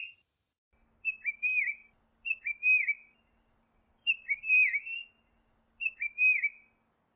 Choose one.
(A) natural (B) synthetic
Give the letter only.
A